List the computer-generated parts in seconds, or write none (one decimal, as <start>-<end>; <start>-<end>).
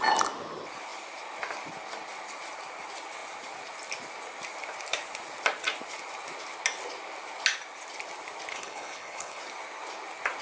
8.5-9.4